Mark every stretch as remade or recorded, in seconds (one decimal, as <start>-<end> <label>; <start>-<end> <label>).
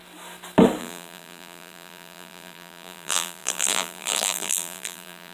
0.0-0.8 recorded; 0.8-5.3 remade